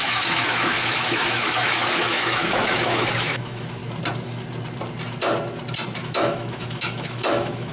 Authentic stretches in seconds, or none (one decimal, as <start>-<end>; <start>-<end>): 3.8-6.0